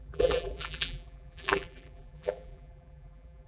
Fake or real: fake